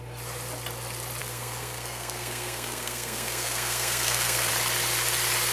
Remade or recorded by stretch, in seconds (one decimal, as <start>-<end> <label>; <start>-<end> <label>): 0.0-1.2 recorded; 1.2-4.5 remade; 4.5-5.5 recorded